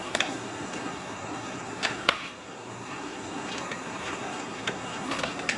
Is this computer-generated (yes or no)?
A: yes